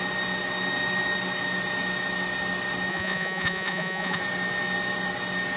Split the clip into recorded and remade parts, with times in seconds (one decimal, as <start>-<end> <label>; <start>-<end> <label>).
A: 0.0-2.9 recorded; 2.9-4.2 remade; 4.2-5.6 recorded